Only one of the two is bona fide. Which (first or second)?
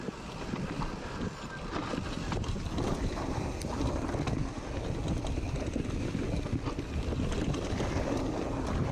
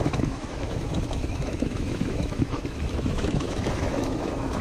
first